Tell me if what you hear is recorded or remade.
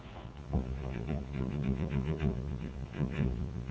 remade